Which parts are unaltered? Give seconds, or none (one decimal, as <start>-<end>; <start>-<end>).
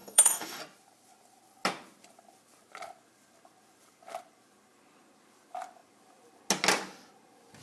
0.6-7.6